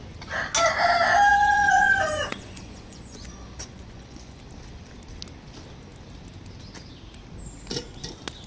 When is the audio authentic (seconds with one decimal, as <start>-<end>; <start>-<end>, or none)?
0.0-1.3; 4.4-8.5